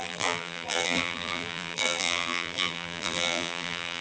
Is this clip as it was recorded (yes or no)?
no